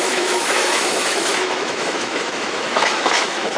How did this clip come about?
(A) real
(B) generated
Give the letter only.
B